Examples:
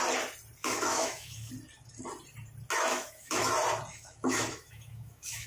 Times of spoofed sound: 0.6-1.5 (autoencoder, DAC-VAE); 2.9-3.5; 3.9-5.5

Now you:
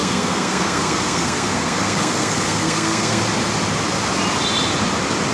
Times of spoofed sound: 0.0-3.2 (codec, SNAC)

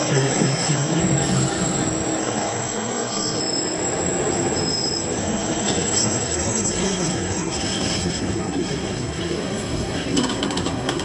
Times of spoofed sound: 0.0-1.0 (codec, SNAC); 2.2-3.4; 5.2-11.0

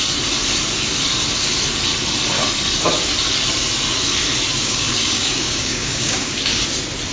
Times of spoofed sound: 4.6-6.6 (codec, DAC)

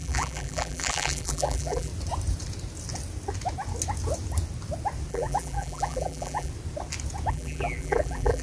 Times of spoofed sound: 0.0-1.9 (vocoder, BigVGAN v2); 5.1-6.5; 7.3-8.4

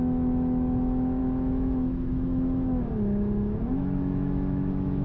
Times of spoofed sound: 0.0-5.0 (autoencoder, DAC-VAE)

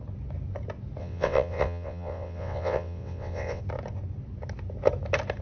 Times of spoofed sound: 1.0-3.6 (vocoder, WaveNeXt)